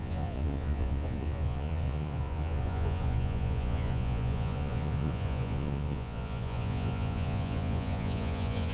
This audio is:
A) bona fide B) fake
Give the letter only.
B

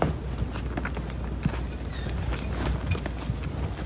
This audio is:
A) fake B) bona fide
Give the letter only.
B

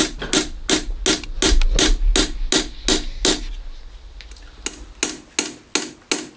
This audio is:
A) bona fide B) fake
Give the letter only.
A